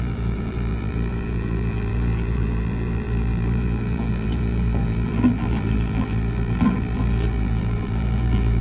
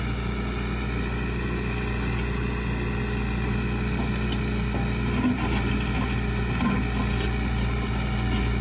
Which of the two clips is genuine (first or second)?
second